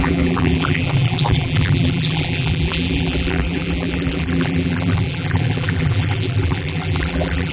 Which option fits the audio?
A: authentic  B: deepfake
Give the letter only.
B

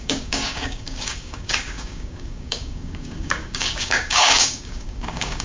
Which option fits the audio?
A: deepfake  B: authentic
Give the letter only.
A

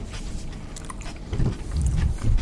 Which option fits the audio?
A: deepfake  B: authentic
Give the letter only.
A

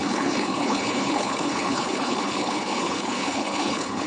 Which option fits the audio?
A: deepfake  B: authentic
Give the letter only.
A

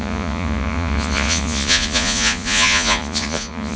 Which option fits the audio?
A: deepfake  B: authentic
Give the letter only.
A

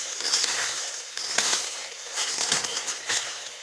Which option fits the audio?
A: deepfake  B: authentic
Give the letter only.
A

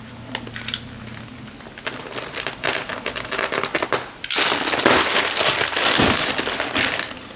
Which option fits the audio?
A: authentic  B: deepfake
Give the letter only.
A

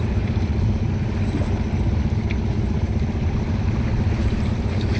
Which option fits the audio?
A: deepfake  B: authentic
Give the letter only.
B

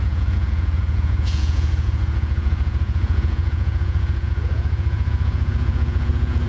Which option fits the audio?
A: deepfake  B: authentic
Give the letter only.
A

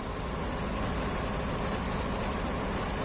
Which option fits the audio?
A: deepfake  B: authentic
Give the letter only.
B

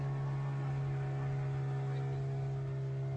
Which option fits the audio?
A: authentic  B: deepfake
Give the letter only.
A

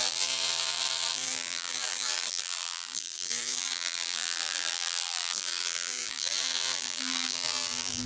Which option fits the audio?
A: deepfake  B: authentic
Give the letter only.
A